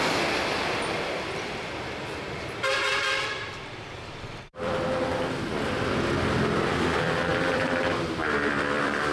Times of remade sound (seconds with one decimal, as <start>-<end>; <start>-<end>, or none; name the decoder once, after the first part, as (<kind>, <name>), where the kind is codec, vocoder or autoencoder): 0.0-2.9 (vocoder, BigVGAN v2); 3.4-9.1